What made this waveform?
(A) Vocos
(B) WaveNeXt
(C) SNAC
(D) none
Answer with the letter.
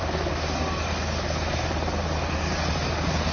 D